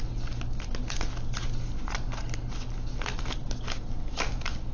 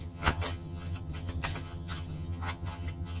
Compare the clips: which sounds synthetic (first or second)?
second